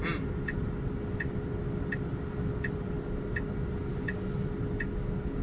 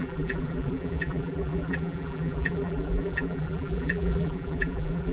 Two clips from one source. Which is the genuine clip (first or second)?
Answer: first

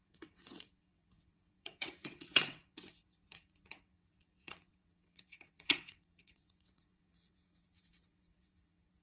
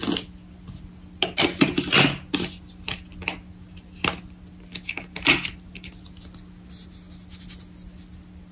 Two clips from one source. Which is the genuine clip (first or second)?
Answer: second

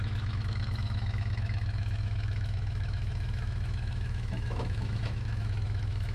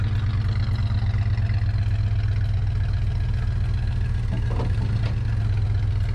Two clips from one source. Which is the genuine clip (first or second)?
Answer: second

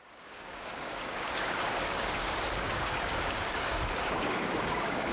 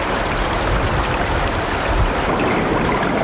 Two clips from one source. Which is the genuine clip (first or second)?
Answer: second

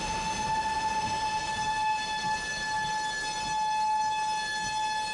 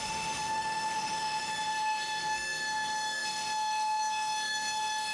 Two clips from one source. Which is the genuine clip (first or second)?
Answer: first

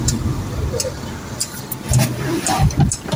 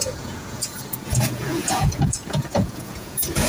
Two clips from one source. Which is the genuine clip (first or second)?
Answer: first